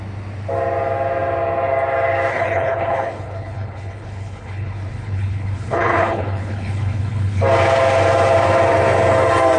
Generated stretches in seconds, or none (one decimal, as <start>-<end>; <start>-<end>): 2.3-7.4